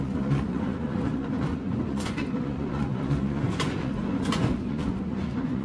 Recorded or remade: remade